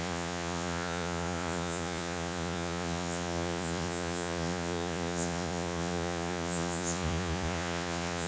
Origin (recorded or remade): remade